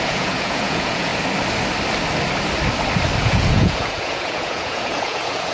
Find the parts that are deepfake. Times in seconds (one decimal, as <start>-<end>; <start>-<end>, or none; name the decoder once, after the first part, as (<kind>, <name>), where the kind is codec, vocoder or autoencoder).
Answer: 0.0-1.1 (vocoder, Vocos); 3.2-5.5